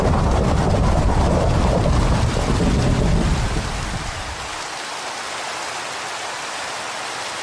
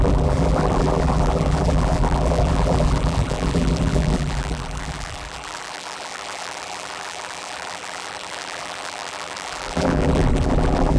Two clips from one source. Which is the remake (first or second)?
second